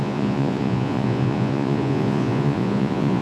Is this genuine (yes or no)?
no